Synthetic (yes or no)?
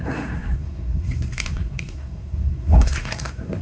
yes